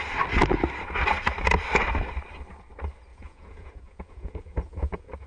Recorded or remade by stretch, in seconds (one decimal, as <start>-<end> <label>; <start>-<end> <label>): 0.0-3.1 recorded; 3.1-5.3 remade